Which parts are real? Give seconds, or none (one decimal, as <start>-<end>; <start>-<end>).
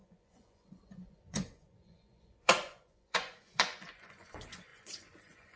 none